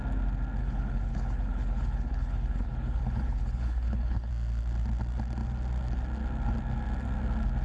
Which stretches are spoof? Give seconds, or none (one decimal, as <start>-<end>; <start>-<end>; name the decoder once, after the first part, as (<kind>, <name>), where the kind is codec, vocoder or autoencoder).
0.6-4.3 (codec, HILCodec)